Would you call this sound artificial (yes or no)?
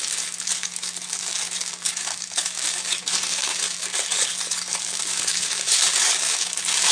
yes